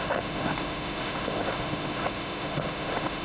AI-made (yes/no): yes